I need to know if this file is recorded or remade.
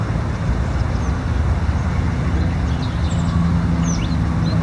recorded